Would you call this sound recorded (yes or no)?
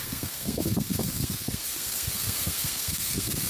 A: no